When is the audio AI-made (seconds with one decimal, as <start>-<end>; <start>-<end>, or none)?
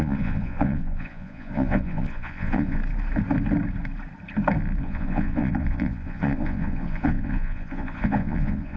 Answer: 0.0-2.8; 4.8-8.8